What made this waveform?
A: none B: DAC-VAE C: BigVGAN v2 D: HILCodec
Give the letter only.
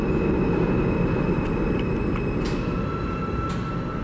A